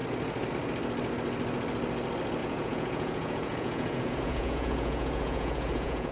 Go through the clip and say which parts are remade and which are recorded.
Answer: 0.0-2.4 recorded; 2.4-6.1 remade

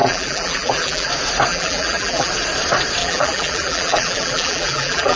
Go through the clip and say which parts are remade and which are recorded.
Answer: 0.0-1.1 remade; 1.1-1.5 recorded; 1.5-2.3 remade; 2.3-3.0 recorded; 3.0-5.2 remade

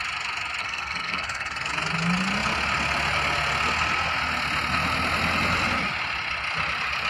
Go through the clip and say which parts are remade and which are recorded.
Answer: 0.0-0.6 recorded; 0.6-1.7 remade; 1.7-7.1 recorded